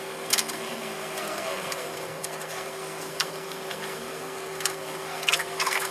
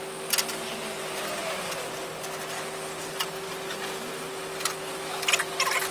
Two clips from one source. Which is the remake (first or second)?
first